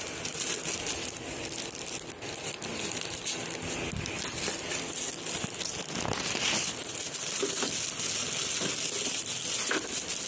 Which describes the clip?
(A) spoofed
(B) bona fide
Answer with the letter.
B